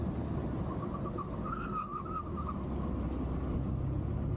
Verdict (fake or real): real